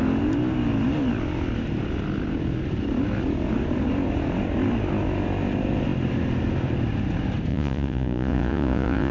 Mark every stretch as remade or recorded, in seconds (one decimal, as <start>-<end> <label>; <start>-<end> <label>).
0.0-7.5 recorded; 7.5-9.1 remade